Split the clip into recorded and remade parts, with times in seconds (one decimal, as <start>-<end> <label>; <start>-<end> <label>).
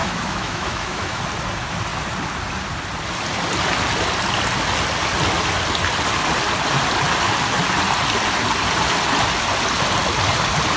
0.0-1.2 remade; 1.2-10.8 recorded